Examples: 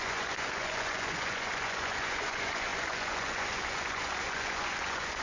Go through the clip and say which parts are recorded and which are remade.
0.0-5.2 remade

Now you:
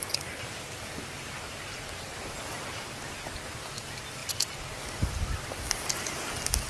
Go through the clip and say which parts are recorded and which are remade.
0.0-6.7 recorded

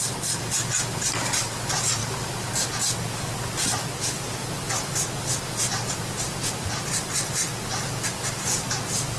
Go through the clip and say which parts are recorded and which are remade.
0.0-9.2 recorded

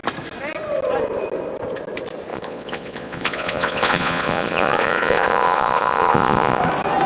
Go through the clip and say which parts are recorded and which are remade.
0.0-2.3 recorded; 2.3-6.6 remade; 6.6-7.1 recorded

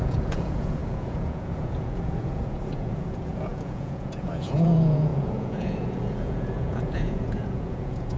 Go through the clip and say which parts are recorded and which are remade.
0.0-8.2 remade

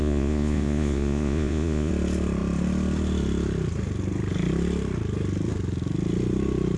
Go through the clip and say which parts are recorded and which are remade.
0.0-1.9 remade; 1.9-6.8 recorded

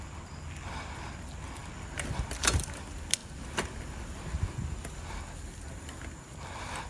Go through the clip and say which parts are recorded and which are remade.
0.0-6.9 recorded